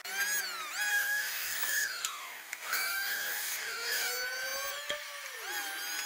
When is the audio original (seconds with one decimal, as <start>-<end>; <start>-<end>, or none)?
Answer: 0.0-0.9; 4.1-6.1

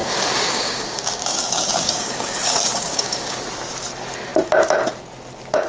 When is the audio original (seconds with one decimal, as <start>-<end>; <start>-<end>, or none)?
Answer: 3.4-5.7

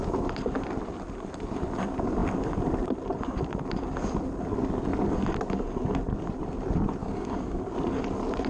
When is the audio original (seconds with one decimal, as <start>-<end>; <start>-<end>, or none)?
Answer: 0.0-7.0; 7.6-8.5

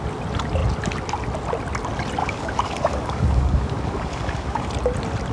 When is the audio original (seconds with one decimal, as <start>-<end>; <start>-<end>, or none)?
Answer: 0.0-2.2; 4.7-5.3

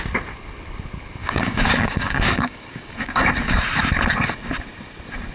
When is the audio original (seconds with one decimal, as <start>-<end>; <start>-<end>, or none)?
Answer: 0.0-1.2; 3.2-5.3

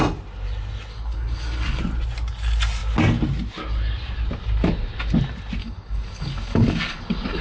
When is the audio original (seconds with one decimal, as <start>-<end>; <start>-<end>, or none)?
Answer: 0.0-0.9; 1.8-5.6

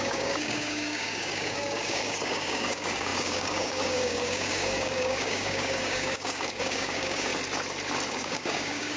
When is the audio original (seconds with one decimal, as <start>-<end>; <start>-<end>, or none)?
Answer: 7.3-8.1

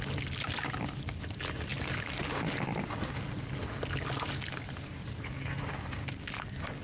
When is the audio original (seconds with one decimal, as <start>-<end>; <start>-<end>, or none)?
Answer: 0.0-6.8